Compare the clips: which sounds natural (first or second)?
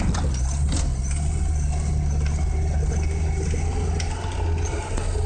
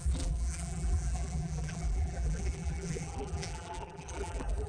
first